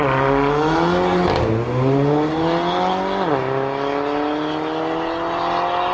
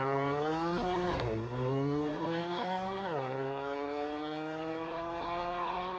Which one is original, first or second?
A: first